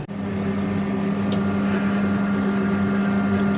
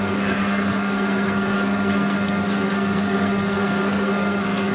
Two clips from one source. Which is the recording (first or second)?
first